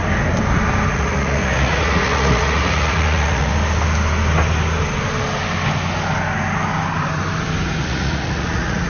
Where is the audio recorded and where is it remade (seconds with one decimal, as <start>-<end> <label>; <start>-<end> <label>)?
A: 0.0-0.9 recorded; 0.9-3.5 remade; 3.5-7.8 recorded; 7.8-8.9 remade